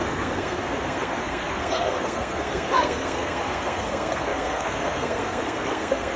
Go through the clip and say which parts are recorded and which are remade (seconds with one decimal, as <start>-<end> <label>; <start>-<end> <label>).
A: 0.0-6.2 remade